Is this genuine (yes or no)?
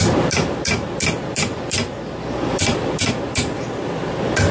no